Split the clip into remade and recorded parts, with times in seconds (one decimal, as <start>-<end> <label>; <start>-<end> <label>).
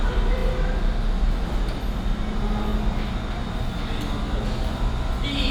0.0-5.5 recorded